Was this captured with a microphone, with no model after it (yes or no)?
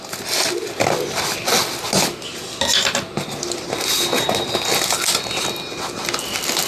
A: yes